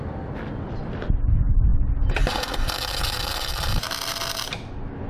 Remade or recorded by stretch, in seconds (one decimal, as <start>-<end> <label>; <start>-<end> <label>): 0.0-5.1 recorded